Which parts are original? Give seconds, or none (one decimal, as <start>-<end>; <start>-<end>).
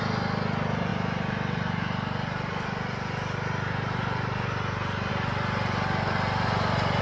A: 0.0-7.0